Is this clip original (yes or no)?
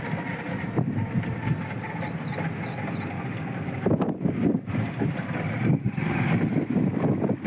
yes